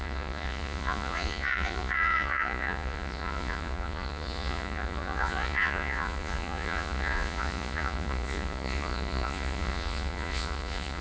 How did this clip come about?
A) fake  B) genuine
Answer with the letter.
A